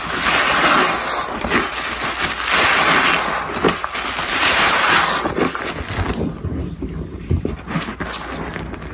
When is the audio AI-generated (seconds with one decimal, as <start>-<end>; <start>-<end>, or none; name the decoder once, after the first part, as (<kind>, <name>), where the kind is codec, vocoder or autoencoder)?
4.3-5.0 (vocoder, BigVGAN v2); 6.6-8.0